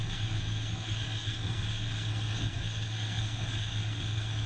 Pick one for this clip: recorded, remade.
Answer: remade